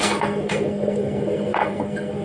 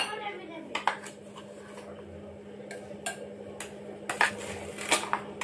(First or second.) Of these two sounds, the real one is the second